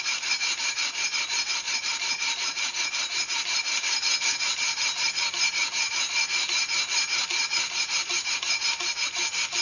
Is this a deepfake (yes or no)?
no